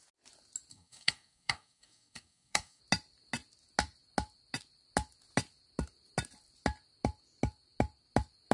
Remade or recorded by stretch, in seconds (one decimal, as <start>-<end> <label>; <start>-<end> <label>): 0.0-0.7 recorded; 0.7-2.8 remade; 2.8-8.5 recorded